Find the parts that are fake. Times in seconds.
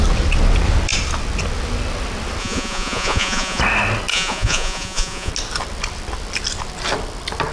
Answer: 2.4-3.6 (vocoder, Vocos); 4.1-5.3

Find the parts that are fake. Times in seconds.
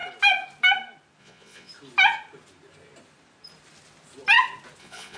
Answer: 1.2-1.7 (vocoder, Vocos); 4.8-5.2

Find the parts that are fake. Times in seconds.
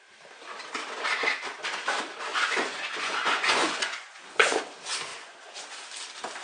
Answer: 2.3-4.6 (vocoder, Vocos); 5.1-5.6